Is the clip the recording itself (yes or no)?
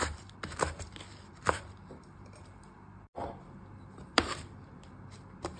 no